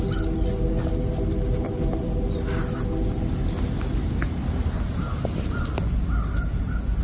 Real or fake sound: real